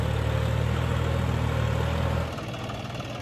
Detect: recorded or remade recorded